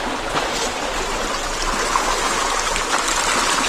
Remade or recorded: recorded